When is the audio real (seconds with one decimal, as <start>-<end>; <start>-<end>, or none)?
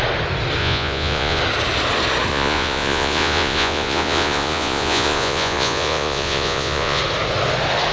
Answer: 0.0-0.6; 1.4-2.3; 7.0-7.9